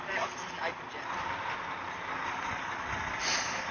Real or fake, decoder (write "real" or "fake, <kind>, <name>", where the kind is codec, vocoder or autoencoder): real